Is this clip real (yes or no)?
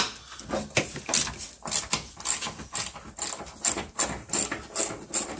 yes